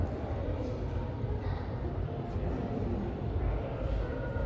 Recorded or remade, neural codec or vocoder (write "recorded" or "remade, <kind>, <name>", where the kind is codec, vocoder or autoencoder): remade, vocoder, BigVGAN v2